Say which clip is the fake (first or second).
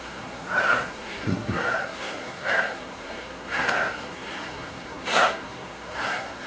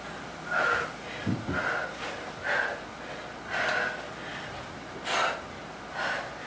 first